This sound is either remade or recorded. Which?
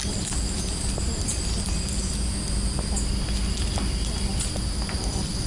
recorded